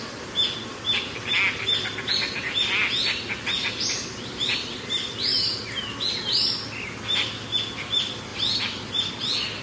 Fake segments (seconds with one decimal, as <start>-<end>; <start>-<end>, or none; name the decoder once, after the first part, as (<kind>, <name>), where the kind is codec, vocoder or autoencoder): 8.3-9.1 (vocoder, BigVGAN v2)